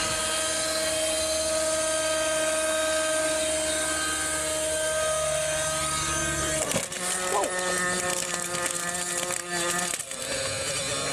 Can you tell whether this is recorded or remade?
recorded